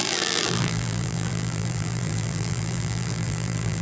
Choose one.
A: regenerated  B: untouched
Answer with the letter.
A